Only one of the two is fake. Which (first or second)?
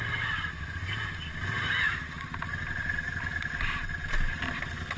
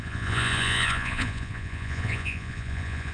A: second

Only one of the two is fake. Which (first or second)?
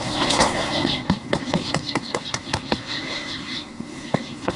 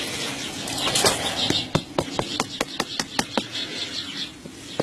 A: first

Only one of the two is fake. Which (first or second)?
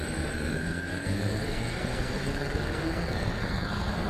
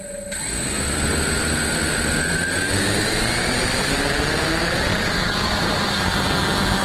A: first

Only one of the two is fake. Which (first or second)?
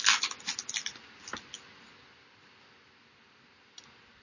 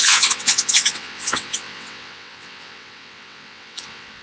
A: second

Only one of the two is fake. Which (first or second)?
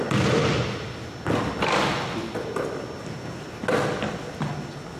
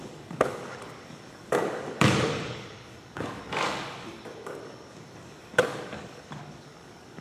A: second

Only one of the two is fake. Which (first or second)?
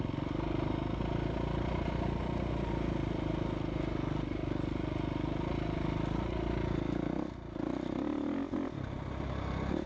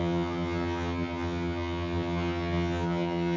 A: second